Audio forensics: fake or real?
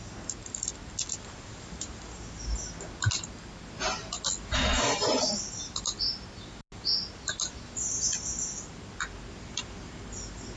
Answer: real